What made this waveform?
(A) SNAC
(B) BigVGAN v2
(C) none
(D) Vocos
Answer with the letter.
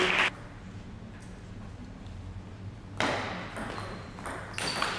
C